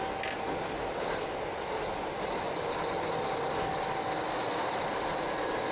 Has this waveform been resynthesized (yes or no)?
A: no